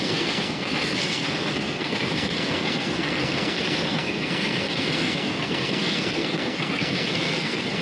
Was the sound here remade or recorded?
remade